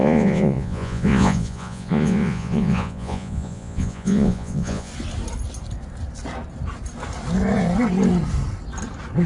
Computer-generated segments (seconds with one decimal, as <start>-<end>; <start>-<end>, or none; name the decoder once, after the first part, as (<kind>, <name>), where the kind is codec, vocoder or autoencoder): 0.0-4.9 (vocoder, Vocos)